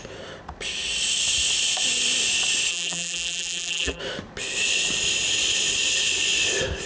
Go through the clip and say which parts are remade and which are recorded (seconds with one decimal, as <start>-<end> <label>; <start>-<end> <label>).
0.0-2.7 recorded; 2.7-4.0 remade; 4.0-6.9 recorded